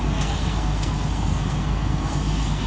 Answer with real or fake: fake